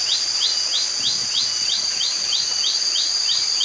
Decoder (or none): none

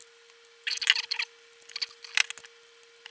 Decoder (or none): none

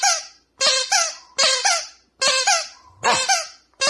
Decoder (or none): none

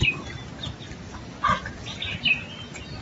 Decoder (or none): none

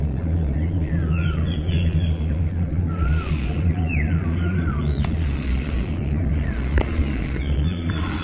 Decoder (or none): vocoder, Vocos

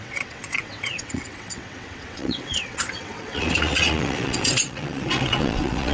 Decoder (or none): vocoder, WaveNeXt